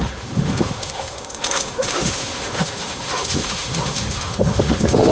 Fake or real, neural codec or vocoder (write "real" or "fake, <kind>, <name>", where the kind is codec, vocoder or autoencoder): fake, autoencoder, DAC-VAE